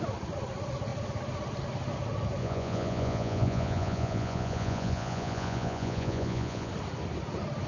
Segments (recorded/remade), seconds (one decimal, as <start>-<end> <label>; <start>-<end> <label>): 0.0-2.4 recorded; 2.4-6.7 remade; 6.7-7.7 recorded